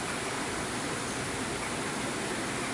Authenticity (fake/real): fake